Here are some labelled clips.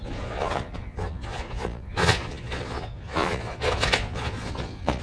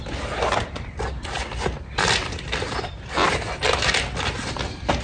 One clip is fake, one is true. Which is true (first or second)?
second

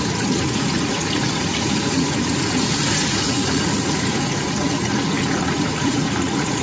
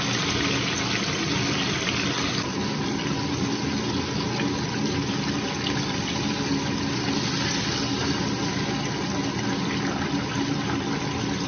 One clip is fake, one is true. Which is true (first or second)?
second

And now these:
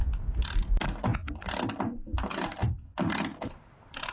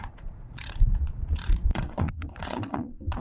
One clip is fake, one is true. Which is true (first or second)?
first